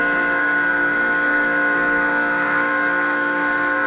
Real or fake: fake